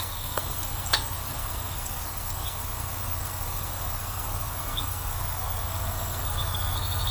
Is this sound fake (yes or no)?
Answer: yes